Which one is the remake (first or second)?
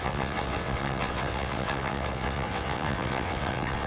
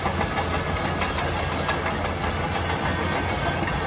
first